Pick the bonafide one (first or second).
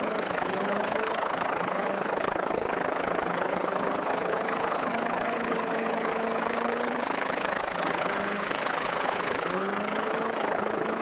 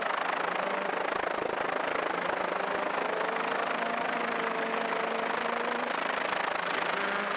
second